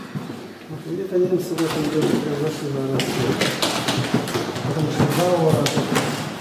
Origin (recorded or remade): recorded